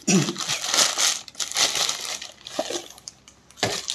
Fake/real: real